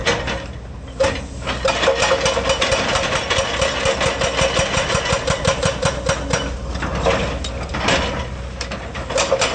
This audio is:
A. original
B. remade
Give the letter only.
A